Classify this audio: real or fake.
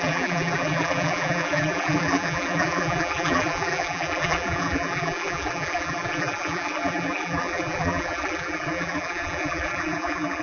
fake